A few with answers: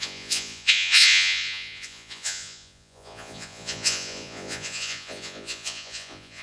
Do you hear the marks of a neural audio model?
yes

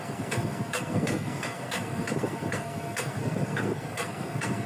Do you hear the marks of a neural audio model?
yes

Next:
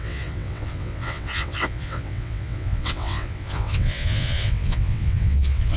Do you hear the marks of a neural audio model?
yes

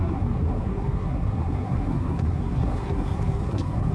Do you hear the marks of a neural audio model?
yes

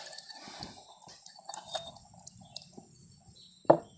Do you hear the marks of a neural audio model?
no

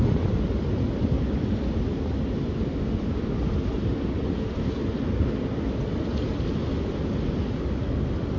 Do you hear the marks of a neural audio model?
no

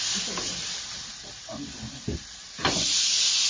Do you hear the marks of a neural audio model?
no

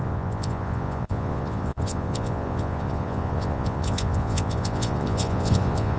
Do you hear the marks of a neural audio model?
yes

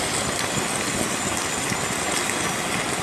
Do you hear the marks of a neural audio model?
no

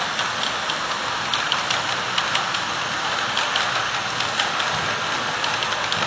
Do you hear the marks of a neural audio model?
no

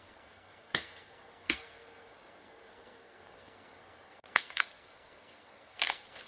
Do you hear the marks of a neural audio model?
yes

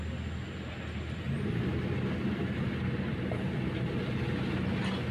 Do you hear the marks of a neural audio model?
no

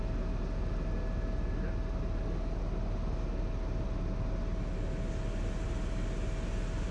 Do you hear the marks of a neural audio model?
no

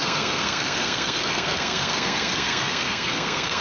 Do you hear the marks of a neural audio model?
yes